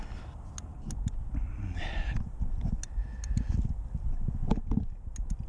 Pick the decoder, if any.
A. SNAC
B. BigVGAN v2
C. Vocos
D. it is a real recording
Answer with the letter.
D